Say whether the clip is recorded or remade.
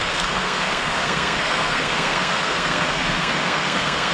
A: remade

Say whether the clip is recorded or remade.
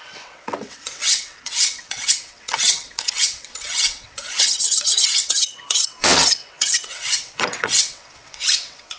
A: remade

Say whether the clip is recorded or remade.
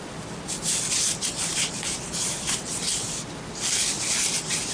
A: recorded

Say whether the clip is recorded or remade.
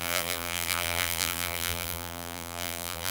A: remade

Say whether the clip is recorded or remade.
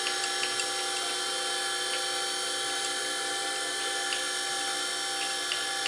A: recorded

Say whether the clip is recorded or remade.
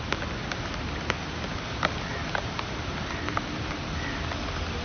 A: recorded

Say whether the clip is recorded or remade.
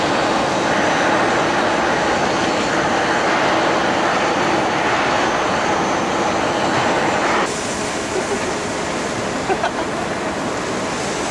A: recorded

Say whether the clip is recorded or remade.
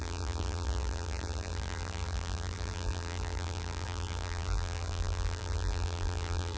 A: remade